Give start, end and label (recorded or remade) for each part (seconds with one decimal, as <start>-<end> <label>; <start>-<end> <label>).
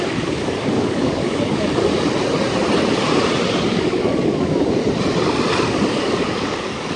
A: 0.0-1.9 remade; 1.9-3.7 recorded; 3.7-4.8 remade; 4.8-5.9 recorded; 5.9-7.0 remade